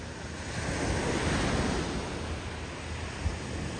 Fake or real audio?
real